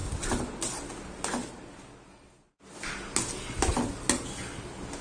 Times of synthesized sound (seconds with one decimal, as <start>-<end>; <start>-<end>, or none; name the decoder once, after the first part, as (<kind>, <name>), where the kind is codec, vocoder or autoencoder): none